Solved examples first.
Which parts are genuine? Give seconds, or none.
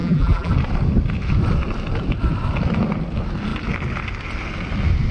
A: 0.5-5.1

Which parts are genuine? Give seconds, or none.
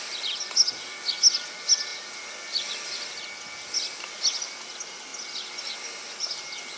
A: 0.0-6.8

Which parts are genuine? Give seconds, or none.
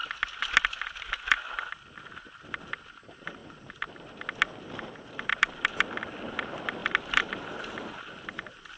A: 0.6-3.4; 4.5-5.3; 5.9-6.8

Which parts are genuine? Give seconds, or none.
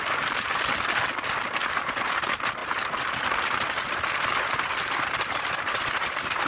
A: 0.0-1.6; 2.1-2.6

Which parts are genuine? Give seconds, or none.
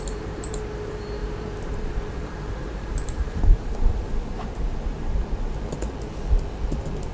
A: 5.2-7.1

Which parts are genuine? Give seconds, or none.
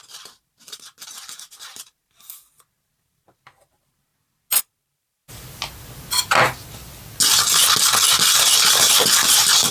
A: 4.1-4.6; 5.2-8.7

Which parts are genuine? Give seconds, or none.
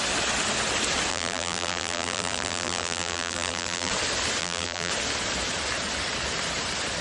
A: 0.0-1.1; 3.9-4.4; 4.9-7.0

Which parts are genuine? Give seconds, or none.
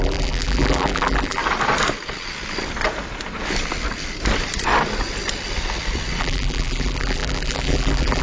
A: 1.4-6.2